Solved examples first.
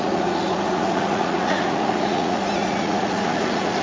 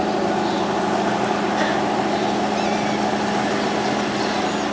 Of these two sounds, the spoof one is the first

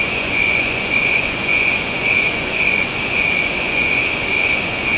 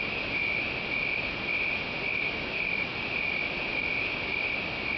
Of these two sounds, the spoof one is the first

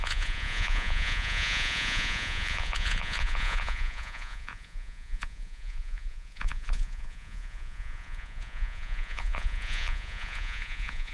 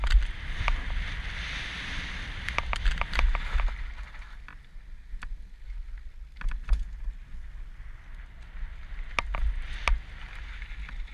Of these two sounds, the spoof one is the first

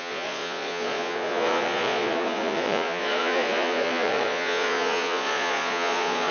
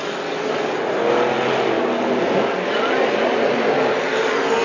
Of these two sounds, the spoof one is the first